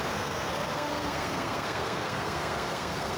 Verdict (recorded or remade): remade